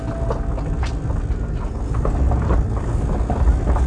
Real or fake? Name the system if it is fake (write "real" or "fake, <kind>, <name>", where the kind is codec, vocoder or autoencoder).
real